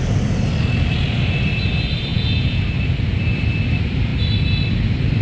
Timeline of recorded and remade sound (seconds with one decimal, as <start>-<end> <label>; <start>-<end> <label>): 0.0-2.1 recorded; 2.1-2.6 remade; 2.6-5.2 recorded